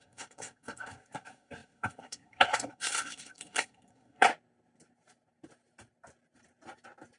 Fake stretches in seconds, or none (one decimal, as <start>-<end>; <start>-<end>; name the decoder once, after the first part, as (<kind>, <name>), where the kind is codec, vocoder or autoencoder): 0.0-4.3 (codec, SNAC)